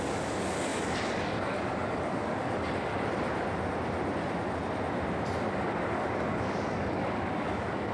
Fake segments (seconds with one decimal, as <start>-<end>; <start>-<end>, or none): 0.0-2.9; 5.5-7.9